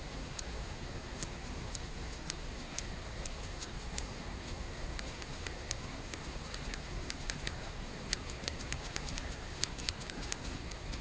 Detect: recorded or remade remade